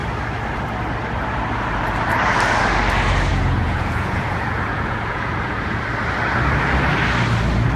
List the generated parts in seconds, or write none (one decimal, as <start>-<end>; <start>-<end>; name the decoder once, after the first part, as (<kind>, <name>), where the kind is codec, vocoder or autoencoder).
3.3-5.8 (vocoder, Vocos)